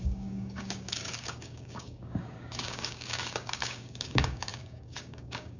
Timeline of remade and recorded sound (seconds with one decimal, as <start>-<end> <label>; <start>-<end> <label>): 0.0-5.6 remade